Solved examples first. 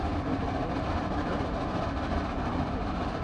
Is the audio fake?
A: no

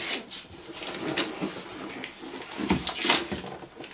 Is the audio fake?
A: no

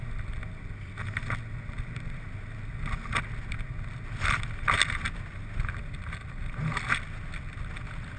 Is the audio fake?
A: no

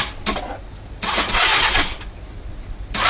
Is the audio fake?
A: no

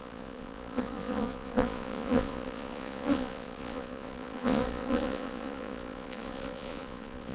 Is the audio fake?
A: yes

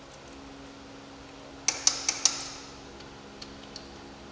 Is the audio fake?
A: no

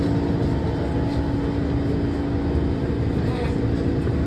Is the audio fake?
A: no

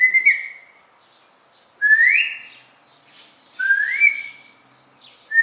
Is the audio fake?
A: no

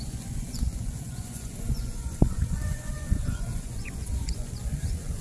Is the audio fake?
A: yes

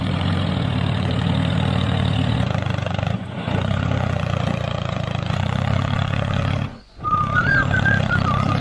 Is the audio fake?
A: yes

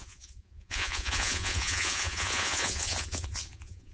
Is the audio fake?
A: yes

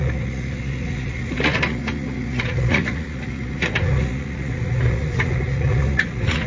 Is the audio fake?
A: yes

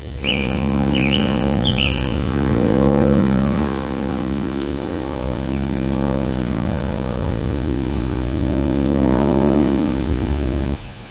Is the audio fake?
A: yes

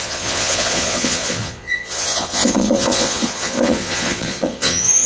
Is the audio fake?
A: yes